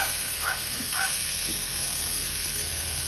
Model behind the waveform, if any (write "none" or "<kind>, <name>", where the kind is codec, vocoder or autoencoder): codec, SNAC